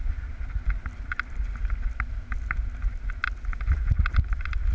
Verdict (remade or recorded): recorded